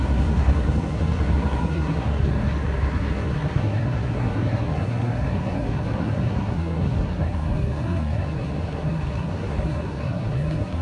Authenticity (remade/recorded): remade